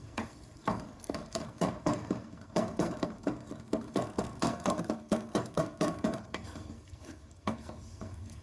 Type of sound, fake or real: fake